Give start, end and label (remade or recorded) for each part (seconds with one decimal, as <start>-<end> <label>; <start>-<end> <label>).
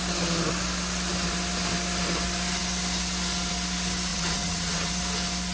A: 0.0-4.1 recorded; 4.1-4.9 remade; 4.9-5.5 recorded